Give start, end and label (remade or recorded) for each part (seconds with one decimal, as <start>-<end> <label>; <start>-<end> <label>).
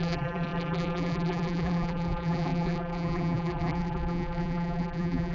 0.0-5.3 remade